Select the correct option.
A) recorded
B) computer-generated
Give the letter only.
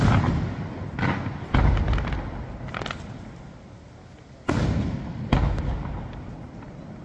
A